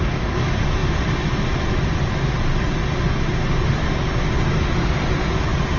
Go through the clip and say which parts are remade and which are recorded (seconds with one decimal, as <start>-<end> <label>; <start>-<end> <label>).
0.0-5.8 recorded